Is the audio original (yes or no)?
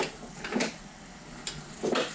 yes